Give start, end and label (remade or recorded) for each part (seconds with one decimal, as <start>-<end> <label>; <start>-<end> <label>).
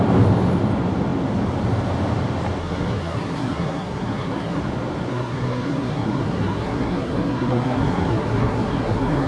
0.0-2.6 recorded; 2.6-4.6 remade; 4.6-5.1 recorded; 5.1-9.3 remade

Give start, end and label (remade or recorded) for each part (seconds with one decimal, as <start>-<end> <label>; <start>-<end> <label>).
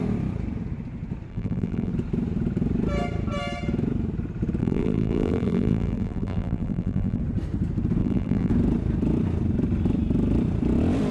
0.0-1.3 recorded; 1.3-1.9 remade; 1.9-4.6 recorded; 4.6-7.2 remade; 7.2-8.0 recorded; 8.0-8.5 remade; 8.5-11.1 recorded